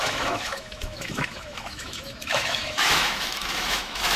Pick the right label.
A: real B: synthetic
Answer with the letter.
B